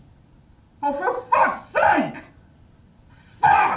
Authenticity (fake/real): real